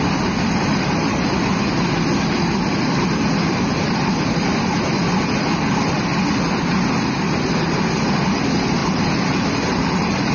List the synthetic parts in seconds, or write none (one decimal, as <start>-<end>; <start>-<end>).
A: 8.8-10.3